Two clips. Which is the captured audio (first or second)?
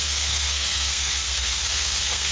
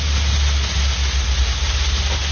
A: second